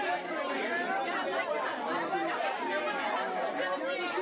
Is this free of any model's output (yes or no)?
yes